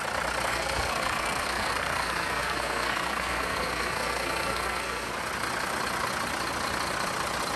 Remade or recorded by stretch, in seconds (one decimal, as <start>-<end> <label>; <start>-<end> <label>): 0.0-0.5 recorded; 0.5-5.1 remade; 5.1-7.6 recorded